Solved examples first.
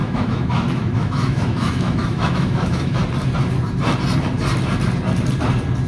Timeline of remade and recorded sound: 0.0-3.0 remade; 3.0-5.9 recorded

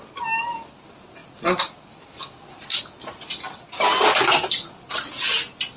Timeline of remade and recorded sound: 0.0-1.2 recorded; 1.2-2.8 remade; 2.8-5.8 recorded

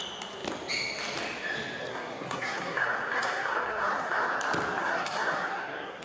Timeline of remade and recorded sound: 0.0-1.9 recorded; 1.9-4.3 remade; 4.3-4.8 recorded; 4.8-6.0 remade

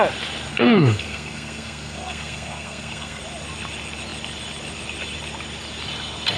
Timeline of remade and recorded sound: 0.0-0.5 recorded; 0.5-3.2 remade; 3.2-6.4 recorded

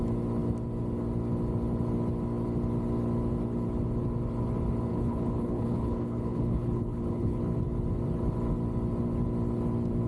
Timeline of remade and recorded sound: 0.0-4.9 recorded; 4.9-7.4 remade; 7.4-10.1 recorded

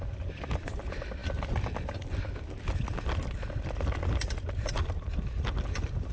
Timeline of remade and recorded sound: 0.0-6.1 recorded

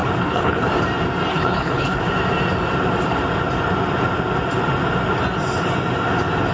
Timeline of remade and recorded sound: 0.0-0.7 remade; 0.7-1.3 recorded; 1.3-2.0 remade; 2.0-6.5 recorded

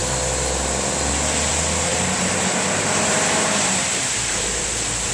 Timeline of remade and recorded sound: 0.0-1.9 recorded; 1.9-5.1 remade